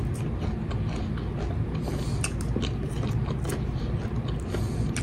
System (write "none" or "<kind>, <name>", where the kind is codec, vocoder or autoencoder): none